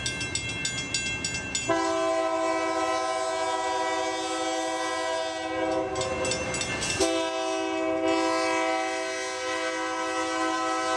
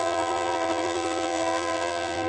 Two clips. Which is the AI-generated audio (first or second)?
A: second